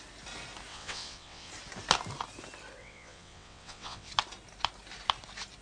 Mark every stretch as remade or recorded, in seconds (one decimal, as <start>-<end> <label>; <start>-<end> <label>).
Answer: 0.0-0.7 recorded; 0.7-1.5 remade; 1.5-2.8 recorded; 2.8-4.1 remade; 4.1-5.6 recorded